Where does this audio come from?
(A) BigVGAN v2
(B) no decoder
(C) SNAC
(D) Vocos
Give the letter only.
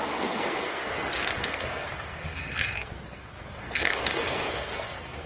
C